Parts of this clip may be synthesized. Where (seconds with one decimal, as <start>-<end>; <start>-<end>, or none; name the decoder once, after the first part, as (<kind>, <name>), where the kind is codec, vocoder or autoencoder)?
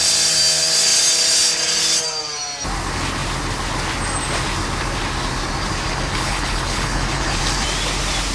6.1-7.4 (codec, HILCodec)